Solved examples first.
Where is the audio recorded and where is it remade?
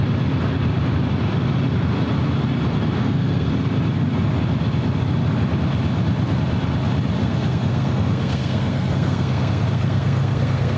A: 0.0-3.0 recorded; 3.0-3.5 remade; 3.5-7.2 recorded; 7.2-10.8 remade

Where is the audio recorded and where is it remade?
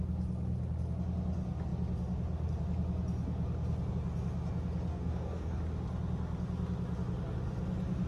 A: 0.0-4.9 recorded; 4.9-5.6 remade; 5.6-8.1 recorded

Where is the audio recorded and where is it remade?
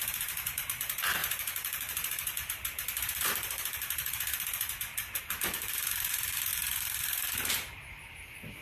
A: 0.0-8.6 remade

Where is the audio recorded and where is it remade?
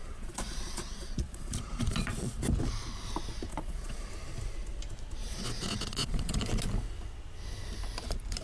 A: 0.0-2.4 remade; 2.4-3.5 recorded; 3.5-4.1 remade; 4.1-5.2 recorded; 5.2-6.4 remade; 6.4-8.4 recorded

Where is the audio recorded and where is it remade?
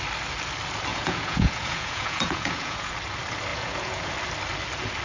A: 0.0-0.9 recorded; 0.9-2.9 remade; 2.9-3.5 recorded; 3.5-4.1 remade; 4.1-5.0 recorded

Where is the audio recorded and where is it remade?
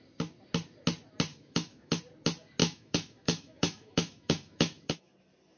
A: 0.0-1.3 recorded; 1.3-2.0 remade; 2.0-2.6 recorded; 2.6-5.1 remade; 5.1-5.6 recorded